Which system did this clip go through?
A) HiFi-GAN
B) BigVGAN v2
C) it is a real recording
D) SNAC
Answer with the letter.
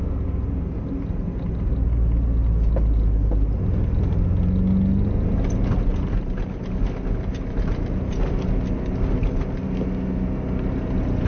C